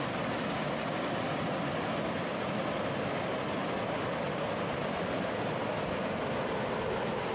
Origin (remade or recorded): recorded